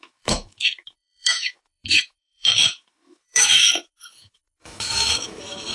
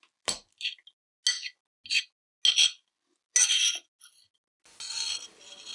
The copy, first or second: first